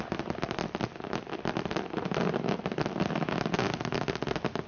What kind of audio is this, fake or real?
real